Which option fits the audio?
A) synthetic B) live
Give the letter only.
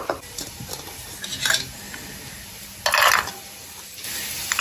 B